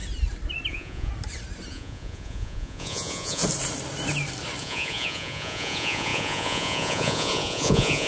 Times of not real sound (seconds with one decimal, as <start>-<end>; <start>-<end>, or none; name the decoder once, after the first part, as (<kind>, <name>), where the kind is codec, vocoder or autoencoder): 0.7-1.1 (vocoder, Vocos); 1.7-3.4; 4.6-8.1